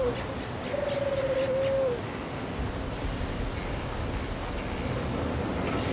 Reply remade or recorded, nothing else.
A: recorded